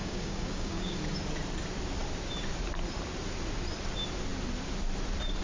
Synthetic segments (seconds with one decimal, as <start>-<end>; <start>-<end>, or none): 0.0-1.0

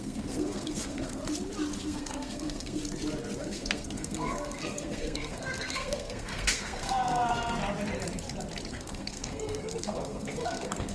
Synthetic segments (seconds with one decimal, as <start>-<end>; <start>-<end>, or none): 0.0-1.2; 1.8-2.8; 3.4-7.6; 8.7-10.9

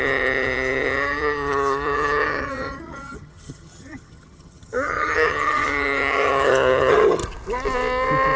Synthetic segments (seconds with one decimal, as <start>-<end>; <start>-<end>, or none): 0.0-7.2

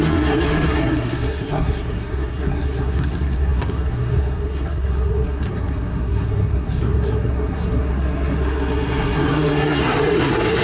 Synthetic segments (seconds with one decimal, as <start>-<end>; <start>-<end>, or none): 0.0-10.6

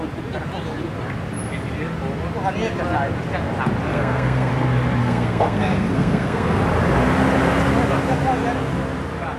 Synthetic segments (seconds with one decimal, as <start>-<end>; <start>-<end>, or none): 3.9-4.5; 5.0-6.6

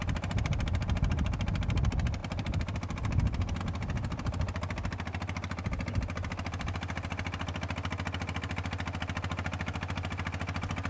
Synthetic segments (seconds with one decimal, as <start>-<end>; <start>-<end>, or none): none